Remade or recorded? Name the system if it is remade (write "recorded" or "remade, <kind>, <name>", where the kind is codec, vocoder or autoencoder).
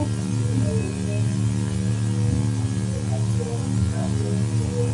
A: recorded